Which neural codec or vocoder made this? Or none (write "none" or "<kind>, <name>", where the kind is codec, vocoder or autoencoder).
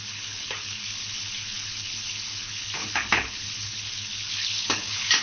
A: codec, HILCodec